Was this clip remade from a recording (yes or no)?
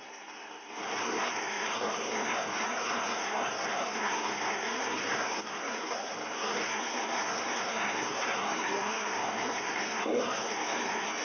yes